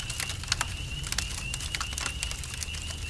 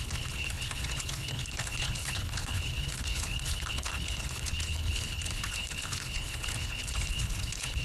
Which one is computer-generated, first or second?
second